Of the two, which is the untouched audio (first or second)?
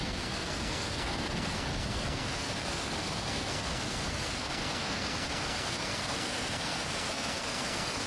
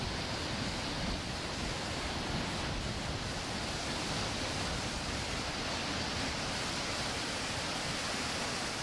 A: second